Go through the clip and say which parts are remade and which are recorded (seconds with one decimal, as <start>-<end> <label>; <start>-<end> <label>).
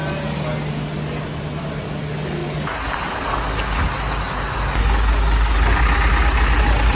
0.0-6.9 recorded